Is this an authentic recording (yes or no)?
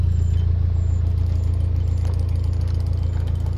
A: yes